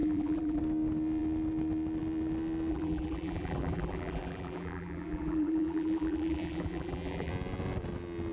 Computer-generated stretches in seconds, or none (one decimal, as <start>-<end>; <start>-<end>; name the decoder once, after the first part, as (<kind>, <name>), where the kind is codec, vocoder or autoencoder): 0.0-0.6 (vocoder, BigVGAN v2); 2.7-7.3